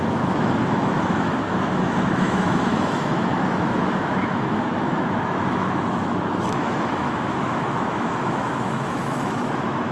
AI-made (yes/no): yes